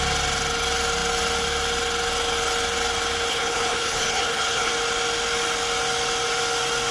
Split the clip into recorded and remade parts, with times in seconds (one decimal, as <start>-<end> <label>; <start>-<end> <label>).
0.0-3.3 recorded; 3.3-4.7 remade; 4.7-6.9 recorded